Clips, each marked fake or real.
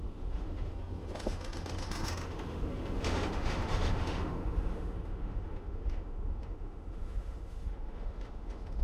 fake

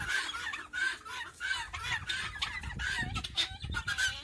real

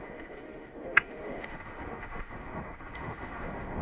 fake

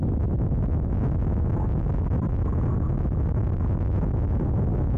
real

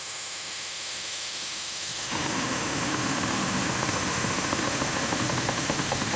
fake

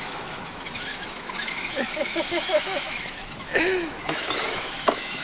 fake